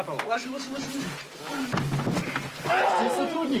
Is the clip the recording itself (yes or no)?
yes